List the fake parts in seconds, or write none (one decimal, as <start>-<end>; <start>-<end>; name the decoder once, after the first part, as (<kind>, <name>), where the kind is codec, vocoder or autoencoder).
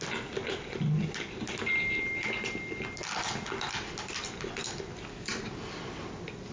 none